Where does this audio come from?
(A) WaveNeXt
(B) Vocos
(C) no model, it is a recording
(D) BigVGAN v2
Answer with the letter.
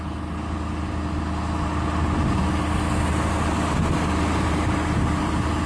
C